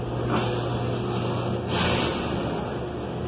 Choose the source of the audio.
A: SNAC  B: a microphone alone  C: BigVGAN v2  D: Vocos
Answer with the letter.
B